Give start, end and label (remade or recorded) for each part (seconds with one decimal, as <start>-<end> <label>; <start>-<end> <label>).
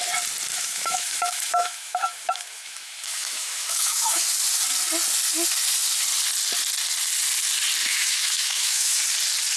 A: 0.0-0.5 recorded; 0.5-4.2 remade; 4.2-7.8 recorded; 7.8-9.0 remade; 9.0-9.6 recorded